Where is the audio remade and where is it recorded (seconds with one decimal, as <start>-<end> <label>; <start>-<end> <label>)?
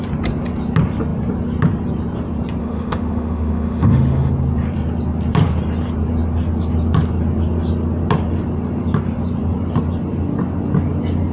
0.0-2.6 recorded; 2.6-4.3 remade; 4.3-11.3 recorded